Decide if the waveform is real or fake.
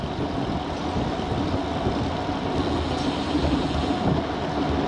real